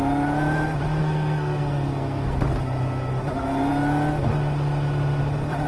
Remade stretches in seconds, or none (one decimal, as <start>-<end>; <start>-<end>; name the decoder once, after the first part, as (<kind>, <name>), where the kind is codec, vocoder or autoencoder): 1.0-2.4 (codec, SNAC)